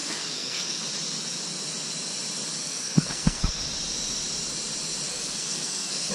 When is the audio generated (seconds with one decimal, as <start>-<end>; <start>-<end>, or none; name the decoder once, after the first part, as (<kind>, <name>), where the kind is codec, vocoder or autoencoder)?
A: 0.0-0.8 (codec, SNAC); 2.6-3.6; 5.1-6.1